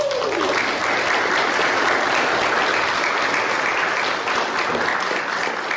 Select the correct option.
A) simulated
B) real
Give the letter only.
B